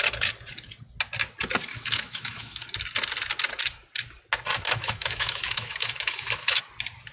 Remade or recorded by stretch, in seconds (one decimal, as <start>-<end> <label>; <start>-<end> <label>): 0.0-1.7 recorded; 1.7-2.6 remade; 2.6-4.5 recorded; 4.5-6.6 remade; 6.6-7.1 recorded